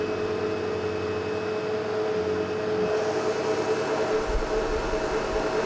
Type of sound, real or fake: real